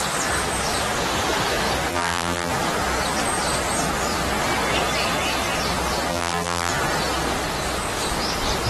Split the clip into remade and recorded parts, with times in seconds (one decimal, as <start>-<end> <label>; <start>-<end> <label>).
0.0-1.9 recorded; 1.9-2.5 remade; 2.5-6.1 recorded; 6.1-6.7 remade; 6.7-8.7 recorded